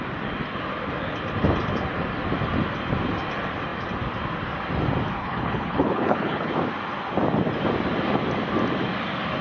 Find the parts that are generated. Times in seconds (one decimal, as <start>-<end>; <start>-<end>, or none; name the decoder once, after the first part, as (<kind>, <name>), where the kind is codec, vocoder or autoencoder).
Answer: 5.2-6.5 (codec, HILCodec)